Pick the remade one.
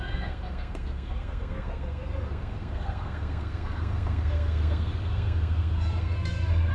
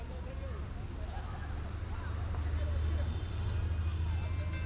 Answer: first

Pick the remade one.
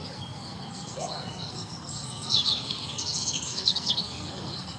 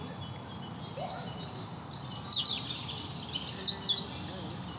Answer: first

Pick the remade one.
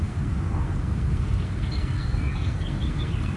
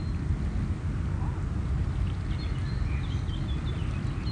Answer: first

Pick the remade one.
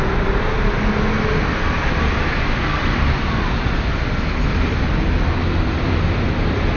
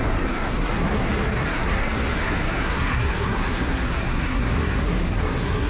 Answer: second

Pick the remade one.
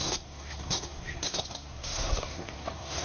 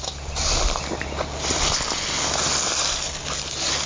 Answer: first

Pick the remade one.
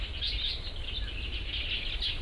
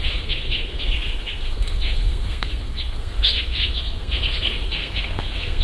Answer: second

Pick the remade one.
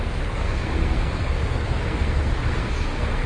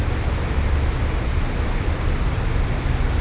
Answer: first